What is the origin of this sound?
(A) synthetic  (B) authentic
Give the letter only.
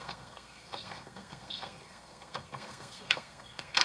A